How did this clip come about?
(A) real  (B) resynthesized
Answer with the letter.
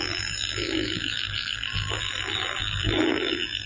B